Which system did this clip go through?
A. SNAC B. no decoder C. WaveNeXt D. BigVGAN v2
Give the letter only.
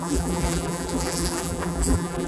D